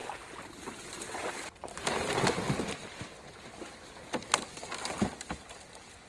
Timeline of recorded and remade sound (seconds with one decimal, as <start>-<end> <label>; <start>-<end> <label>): 0.0-6.1 recorded